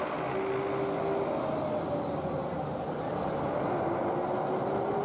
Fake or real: real